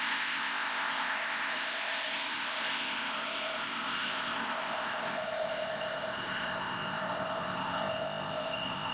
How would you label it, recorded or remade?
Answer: remade